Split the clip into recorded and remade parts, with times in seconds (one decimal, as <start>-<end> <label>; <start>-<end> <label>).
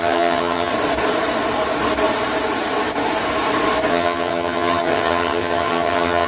0.0-0.7 remade; 0.7-3.9 recorded; 3.9-6.3 remade